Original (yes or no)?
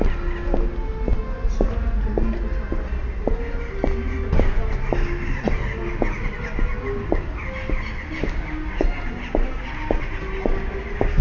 yes